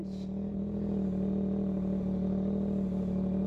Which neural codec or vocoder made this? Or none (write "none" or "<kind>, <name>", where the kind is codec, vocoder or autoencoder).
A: none